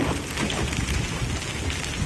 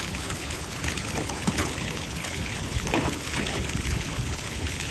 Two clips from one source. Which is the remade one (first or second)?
second